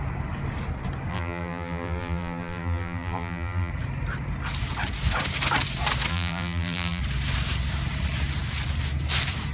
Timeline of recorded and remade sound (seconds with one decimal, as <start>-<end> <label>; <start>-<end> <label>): 0.0-1.1 recorded; 1.1-3.7 remade; 3.7-6.1 recorded; 6.1-7.0 remade; 7.0-9.5 recorded